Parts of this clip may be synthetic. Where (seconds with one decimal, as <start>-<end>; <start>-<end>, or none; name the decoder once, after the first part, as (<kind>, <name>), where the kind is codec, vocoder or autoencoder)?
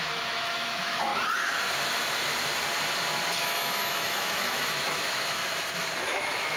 0.0-1.1 (autoencoder, DAC-VAE); 3.4-5.4; 6.0-6.6